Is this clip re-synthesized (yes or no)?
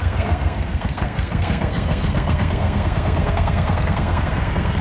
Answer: yes